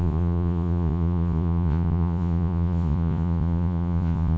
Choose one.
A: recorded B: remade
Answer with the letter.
B